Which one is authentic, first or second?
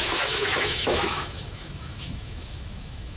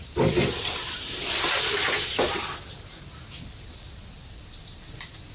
second